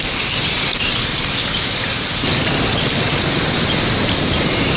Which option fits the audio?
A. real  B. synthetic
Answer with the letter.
A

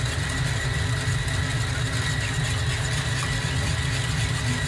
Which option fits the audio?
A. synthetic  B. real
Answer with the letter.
B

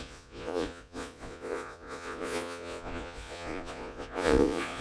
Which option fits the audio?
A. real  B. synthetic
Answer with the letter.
B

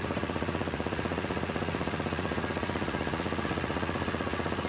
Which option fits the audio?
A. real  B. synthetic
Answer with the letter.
B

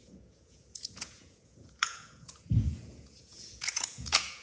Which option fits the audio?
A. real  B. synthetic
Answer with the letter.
B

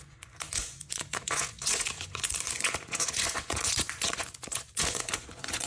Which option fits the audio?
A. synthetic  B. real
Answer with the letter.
A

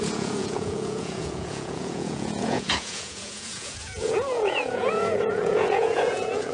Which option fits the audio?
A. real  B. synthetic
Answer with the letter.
B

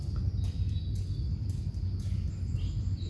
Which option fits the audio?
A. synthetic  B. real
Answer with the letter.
B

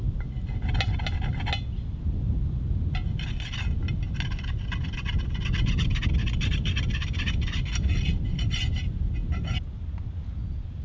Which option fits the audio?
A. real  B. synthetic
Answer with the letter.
A